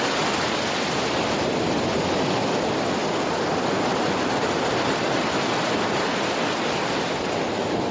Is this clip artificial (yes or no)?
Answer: no